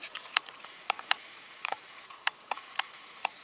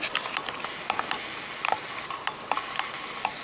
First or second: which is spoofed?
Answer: first